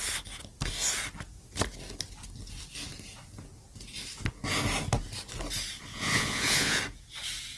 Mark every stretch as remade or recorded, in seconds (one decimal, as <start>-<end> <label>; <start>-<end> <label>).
0.0-5.9 recorded; 5.9-6.8 remade; 6.8-7.6 recorded